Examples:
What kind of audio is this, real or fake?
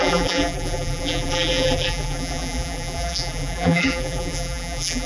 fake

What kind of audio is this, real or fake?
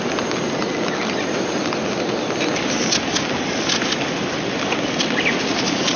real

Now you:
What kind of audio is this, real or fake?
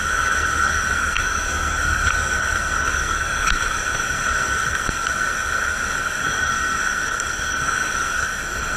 fake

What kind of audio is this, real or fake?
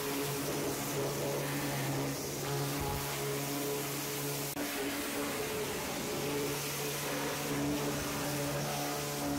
real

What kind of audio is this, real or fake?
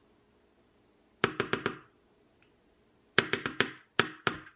real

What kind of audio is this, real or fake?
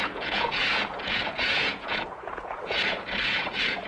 fake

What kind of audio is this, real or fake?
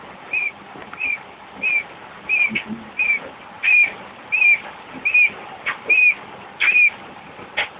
real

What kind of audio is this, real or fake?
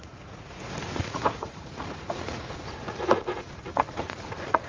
fake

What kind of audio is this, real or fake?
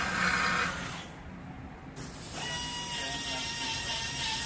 real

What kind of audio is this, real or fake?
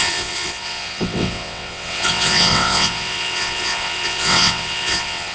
fake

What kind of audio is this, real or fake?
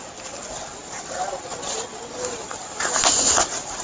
real